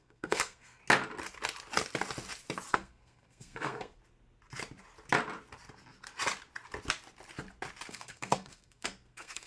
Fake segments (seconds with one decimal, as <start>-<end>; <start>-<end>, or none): 0.0-0.8; 2.7-4.0; 7.9-9.5